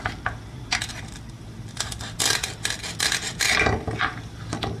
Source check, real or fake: real